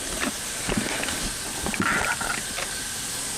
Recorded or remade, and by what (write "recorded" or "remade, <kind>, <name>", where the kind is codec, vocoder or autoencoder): recorded